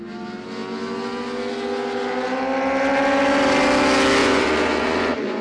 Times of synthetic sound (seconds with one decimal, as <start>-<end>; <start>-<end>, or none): 4.2-5.4